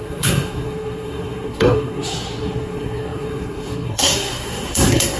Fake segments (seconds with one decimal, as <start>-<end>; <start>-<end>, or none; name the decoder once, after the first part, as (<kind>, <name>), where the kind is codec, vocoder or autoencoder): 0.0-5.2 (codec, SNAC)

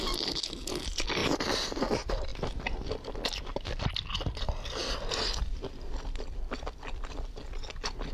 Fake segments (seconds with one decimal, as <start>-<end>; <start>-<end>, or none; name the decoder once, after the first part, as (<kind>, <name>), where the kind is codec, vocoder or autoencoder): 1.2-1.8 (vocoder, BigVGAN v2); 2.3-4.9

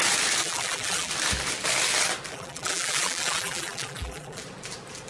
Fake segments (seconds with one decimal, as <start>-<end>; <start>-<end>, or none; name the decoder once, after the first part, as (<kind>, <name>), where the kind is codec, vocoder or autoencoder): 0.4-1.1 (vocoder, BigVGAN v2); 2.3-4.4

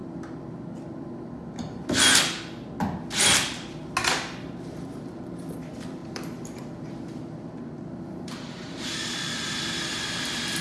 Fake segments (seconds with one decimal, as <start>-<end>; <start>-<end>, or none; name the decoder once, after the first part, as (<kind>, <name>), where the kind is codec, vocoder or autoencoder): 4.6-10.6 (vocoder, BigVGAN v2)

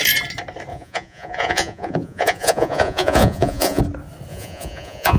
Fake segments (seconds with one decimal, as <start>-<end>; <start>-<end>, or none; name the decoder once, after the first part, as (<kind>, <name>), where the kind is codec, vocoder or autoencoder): 0.7-3.8 (vocoder, Vocos); 4.3-5.2

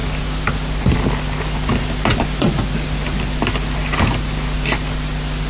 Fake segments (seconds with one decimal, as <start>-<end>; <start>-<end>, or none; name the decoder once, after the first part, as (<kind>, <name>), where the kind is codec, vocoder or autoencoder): none

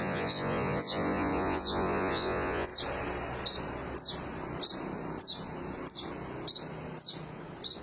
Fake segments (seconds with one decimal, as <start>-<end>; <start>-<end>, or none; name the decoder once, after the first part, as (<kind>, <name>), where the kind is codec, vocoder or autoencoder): 0.0-2.7 (vocoder, Vocos)